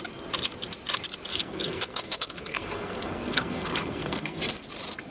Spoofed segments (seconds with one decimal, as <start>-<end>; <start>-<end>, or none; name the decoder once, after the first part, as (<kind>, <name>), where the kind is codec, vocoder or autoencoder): 1.3-4.4 (codec, SNAC)